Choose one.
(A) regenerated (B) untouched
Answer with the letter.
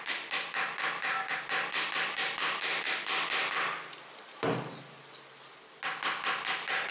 B